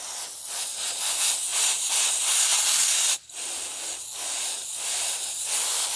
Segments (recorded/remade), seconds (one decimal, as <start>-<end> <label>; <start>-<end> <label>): 0.0-6.0 recorded